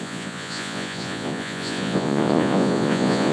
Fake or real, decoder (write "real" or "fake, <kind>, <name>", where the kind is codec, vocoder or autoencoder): fake, vocoder, Vocos